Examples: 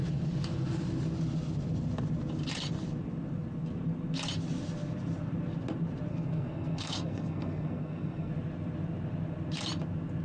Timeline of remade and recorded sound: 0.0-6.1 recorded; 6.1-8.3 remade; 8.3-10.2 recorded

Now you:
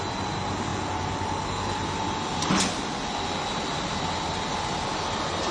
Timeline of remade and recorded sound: 0.0-5.5 recorded

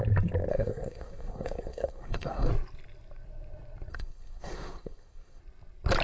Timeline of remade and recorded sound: 0.0-0.5 recorded; 0.5-2.5 remade; 2.5-3.9 recorded; 3.9-5.4 remade; 5.4-6.0 recorded

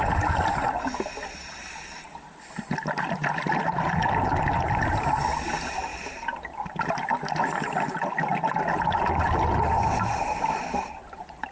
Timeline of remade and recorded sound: 0.0-11.5 recorded

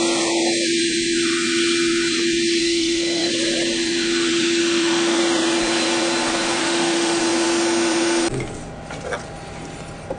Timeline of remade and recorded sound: 0.0-2.6 recorded; 2.6-3.3 remade; 3.3-4.6 recorded; 4.6-5.2 remade; 5.2-6.6 recorded; 6.6-7.2 remade; 7.2-10.2 recorded

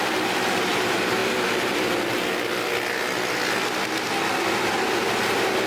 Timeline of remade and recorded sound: 0.0-5.7 recorded

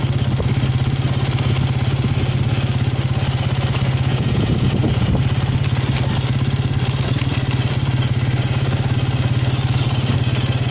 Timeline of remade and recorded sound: 0.0-4.1 recorded; 4.1-5.1 remade; 5.1-10.7 recorded

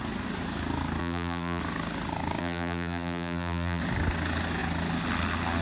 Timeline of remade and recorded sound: 0.0-1.0 recorded; 1.0-1.6 remade; 1.6-2.4 recorded; 2.4-3.8 remade; 3.8-5.6 recorded